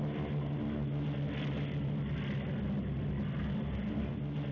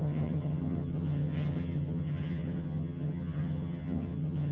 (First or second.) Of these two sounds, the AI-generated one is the second